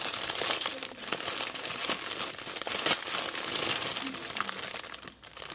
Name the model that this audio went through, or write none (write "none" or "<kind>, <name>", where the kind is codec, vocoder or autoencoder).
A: none